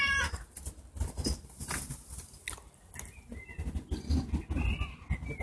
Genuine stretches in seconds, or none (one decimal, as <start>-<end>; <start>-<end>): 0.0-5.4